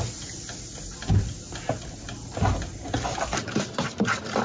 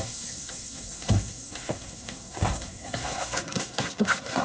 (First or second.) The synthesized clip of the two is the second